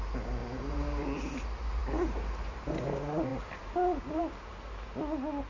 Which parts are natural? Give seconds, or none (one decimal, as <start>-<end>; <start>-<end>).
0.0-0.4; 1.0-5.5